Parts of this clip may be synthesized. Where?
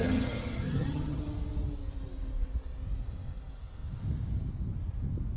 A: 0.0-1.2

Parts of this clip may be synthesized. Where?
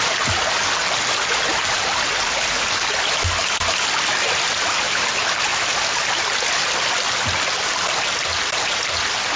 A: none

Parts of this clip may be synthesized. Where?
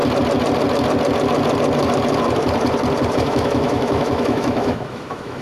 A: 3.1-5.4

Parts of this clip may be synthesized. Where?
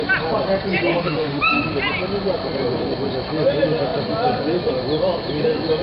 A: 0.9-1.4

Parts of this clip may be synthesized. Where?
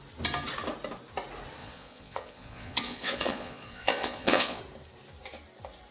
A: 1.6-4.6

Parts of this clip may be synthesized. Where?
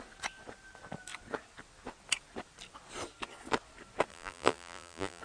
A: 4.1-5.2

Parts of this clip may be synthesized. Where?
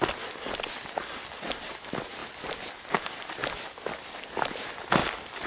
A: none